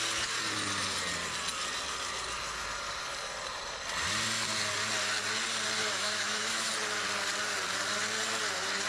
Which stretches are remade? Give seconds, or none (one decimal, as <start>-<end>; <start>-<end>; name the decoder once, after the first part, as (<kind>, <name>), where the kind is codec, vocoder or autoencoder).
5.8-6.7 (autoencoder, DAC-VAE)